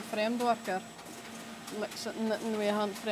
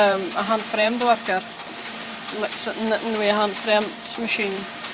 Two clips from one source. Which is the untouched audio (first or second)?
first